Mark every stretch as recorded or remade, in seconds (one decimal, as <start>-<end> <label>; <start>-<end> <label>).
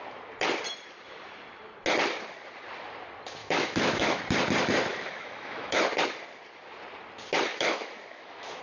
0.0-3.4 recorded; 3.4-4.2 remade; 4.2-4.9 recorded; 4.9-5.8 remade; 5.8-7.5 recorded; 7.5-8.6 remade